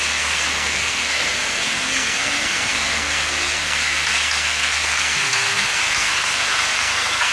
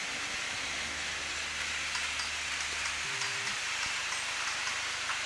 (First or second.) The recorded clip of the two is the second